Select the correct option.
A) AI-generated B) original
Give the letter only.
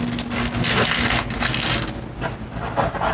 B